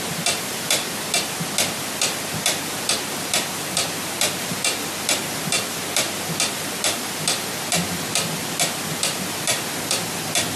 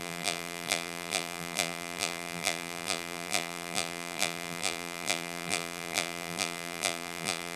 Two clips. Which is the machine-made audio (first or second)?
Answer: second